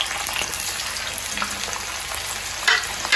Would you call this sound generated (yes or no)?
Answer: no